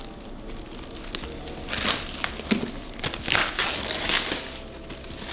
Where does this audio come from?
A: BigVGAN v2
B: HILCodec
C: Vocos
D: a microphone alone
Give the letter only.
D